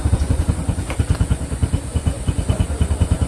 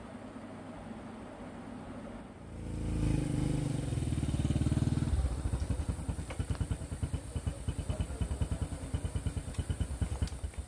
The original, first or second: second